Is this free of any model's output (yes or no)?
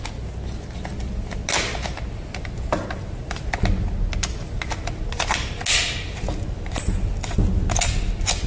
yes